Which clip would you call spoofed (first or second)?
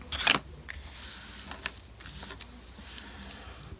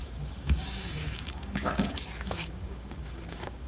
second